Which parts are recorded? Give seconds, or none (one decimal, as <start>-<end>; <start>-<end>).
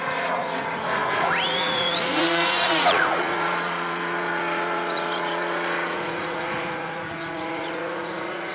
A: none